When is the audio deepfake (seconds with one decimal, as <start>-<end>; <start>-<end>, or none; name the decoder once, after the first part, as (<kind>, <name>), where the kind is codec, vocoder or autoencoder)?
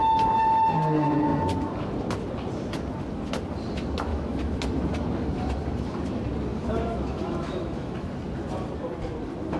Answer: 4.1-4.6 (autoencoder, DAC-VAE); 6.5-8.1